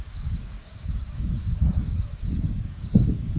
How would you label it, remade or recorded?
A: remade